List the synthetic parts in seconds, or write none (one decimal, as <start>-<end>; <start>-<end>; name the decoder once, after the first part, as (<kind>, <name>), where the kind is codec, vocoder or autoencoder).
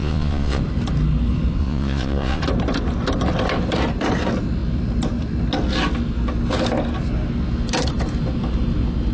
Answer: 0.0-0.6 (vocoder, Vocos); 1.6-2.4